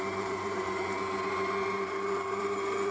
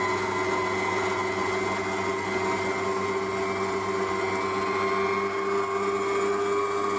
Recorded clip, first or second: second